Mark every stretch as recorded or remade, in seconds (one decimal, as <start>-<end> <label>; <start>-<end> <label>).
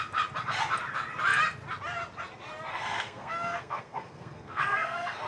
0.0-2.7 recorded; 2.7-5.3 remade